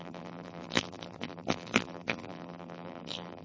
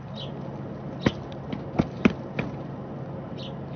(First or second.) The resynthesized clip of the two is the first